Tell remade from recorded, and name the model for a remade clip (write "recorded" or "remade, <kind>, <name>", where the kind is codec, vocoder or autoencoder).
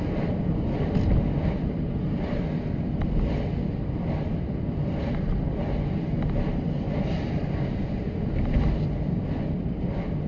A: recorded